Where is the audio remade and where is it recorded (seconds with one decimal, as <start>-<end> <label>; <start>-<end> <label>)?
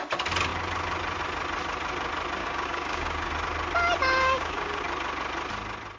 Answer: 0.0-2.4 recorded; 2.4-3.3 remade; 3.3-4.0 recorded; 4.0-4.8 remade; 4.8-6.0 recorded